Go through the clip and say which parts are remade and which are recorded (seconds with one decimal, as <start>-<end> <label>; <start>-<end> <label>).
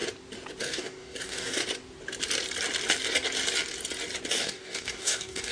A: 0.0-0.6 recorded; 0.6-1.6 remade; 1.6-4.3 recorded; 4.3-5.5 remade